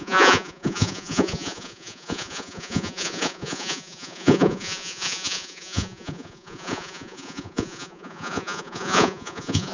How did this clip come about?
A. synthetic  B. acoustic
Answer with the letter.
A